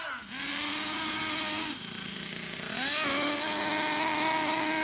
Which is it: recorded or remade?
recorded